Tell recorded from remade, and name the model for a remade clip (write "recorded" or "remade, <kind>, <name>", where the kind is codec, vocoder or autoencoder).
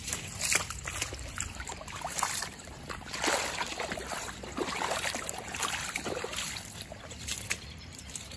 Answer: remade, vocoder, BigVGAN v2